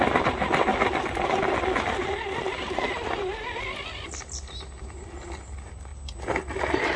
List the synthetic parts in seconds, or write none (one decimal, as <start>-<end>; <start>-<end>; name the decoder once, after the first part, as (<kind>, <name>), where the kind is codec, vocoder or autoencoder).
none